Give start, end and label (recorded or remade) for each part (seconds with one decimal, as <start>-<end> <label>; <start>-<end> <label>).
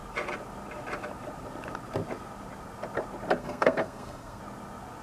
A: 0.0-3.4 recorded; 3.4-4.4 remade; 4.4-5.0 recorded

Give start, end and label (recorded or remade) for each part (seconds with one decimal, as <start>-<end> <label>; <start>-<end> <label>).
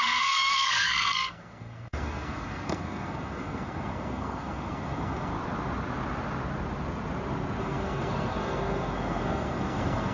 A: 0.0-5.3 remade; 5.3-7.6 recorded; 7.6-10.1 remade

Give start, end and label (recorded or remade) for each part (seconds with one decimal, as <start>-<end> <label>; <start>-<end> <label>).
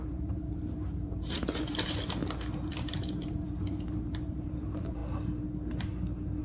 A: 0.0-2.2 remade; 2.2-2.7 recorded; 2.7-5.0 remade; 5.0-6.4 recorded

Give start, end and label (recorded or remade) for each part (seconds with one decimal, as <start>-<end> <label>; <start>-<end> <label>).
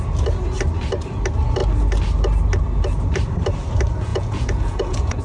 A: 0.0-4.1 recorded; 4.1-5.2 remade